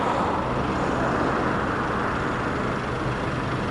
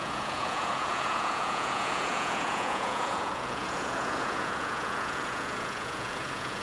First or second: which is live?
first